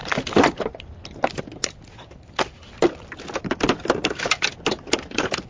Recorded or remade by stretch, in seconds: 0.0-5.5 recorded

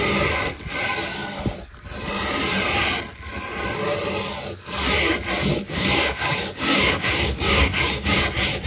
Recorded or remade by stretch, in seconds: 0.0-5.5 recorded; 5.5-8.2 remade; 8.2-8.7 recorded

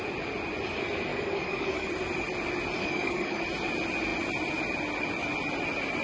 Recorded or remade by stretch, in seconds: 0.0-1.1 recorded; 1.1-1.9 remade; 1.9-2.8 recorded; 2.8-3.4 remade; 3.4-6.0 recorded

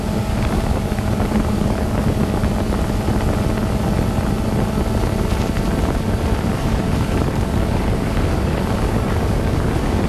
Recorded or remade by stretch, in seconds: 0.0-2.4 remade; 2.4-6.5 recorded; 6.5-10.1 remade

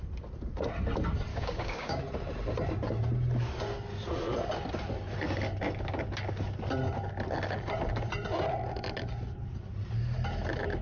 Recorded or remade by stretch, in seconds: 0.0-1.3 recorded; 1.3-2.0 remade; 2.0-10.8 recorded